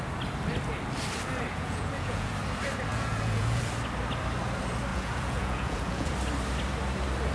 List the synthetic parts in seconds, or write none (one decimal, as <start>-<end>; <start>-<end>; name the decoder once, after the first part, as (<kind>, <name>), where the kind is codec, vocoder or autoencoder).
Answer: 1.5-2.3 (vocoder, Vocos); 2.9-3.6; 4.9-6.1